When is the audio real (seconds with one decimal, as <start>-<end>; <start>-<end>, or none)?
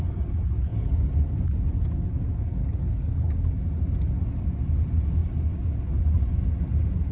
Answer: 0.0-2.6; 3.4-7.1